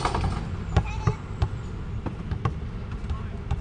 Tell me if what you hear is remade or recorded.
recorded